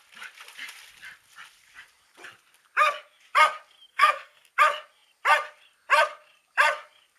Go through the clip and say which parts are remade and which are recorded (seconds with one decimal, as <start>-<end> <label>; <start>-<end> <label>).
0.0-3.9 recorded; 3.9-4.5 remade; 4.5-7.2 recorded